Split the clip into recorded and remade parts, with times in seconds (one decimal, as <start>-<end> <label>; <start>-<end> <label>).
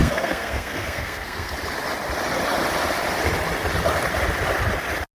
0.0-1.5 remade; 1.5-5.1 recorded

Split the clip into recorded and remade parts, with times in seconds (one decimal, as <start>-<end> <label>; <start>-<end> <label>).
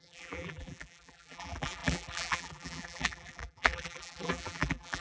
0.0-5.0 remade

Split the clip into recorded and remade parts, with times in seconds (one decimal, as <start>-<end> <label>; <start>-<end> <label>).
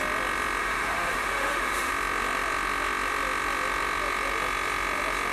0.0-0.6 recorded; 0.6-1.9 remade; 1.9-5.3 recorded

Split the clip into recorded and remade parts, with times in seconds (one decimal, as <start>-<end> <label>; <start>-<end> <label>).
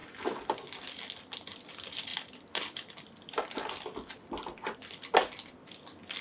0.0-6.2 recorded